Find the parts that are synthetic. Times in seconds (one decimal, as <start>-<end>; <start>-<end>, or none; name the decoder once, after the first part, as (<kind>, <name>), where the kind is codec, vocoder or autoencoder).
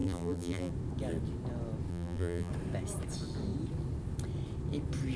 0.0-0.7 (vocoder, BigVGAN v2); 1.9-2.5